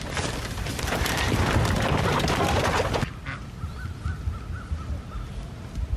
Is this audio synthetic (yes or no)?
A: no